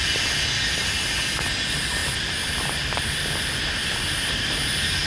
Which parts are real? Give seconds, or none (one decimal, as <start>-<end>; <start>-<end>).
0.0-2.0; 2.5-3.8